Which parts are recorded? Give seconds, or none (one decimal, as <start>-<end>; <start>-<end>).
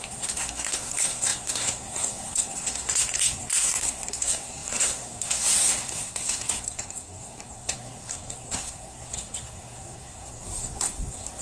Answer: none